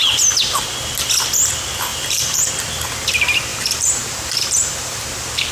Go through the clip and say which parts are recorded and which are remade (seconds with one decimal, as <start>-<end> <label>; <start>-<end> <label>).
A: 0.0-1.9 recorded; 1.9-2.5 remade; 2.5-3.5 recorded; 3.5-5.0 remade; 5.0-5.5 recorded

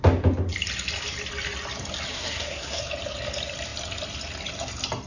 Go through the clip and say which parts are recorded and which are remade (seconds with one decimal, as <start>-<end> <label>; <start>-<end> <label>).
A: 0.0-2.1 recorded; 2.1-2.8 remade; 2.8-5.1 recorded

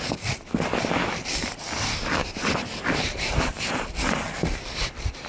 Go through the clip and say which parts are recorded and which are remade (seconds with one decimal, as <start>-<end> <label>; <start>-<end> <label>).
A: 0.0-5.3 remade

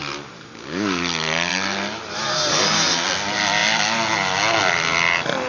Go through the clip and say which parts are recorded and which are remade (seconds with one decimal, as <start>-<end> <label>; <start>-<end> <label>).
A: 0.0-5.5 recorded

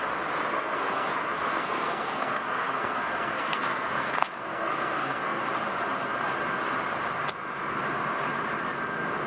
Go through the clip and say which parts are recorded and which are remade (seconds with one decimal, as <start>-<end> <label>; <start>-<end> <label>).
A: 0.0-0.5 recorded; 0.5-5.4 remade; 5.4-9.3 recorded

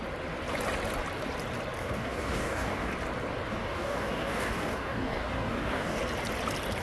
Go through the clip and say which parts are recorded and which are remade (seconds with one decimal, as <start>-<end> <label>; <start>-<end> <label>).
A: 0.0-1.8 recorded; 1.8-2.9 remade; 2.9-3.5 recorded; 3.5-6.0 remade; 6.0-6.8 recorded